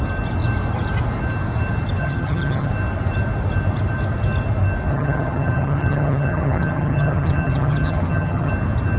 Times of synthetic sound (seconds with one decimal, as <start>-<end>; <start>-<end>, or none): 2.0-2.7; 4.9-8.5